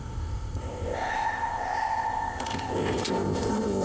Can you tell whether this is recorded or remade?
remade